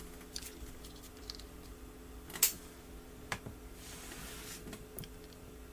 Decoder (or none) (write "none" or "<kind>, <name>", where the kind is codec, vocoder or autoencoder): none